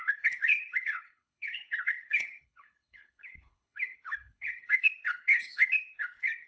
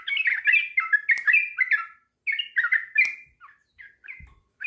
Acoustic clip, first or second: second